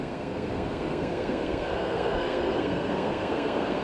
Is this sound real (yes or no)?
no